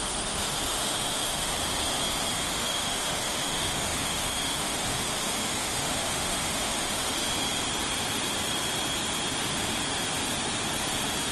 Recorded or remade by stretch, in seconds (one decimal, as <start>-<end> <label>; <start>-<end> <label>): 0.0-1.5 remade; 1.5-2.4 recorded; 2.4-7.2 remade; 7.2-11.3 recorded